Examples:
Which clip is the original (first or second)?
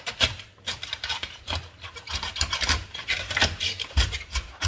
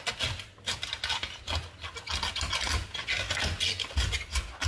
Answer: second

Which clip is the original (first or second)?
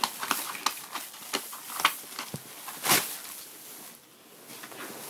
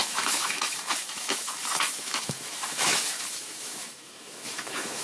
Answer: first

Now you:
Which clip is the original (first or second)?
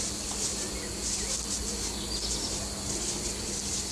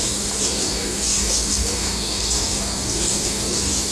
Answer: first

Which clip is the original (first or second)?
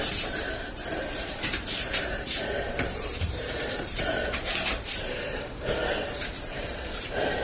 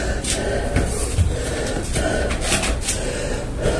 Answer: second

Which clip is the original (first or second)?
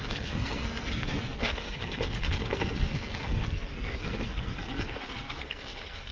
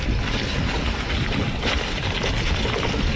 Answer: second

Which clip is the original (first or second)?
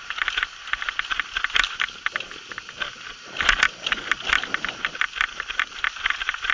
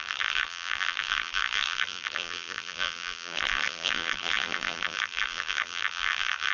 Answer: first